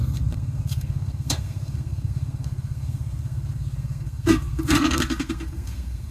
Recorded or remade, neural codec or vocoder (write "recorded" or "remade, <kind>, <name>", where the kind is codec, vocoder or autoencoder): remade, codec, SNAC